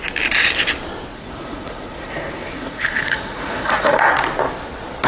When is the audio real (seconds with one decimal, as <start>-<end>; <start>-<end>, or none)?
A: 0.0-1.1; 4.1-5.1